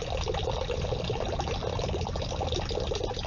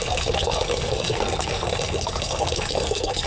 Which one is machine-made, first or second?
second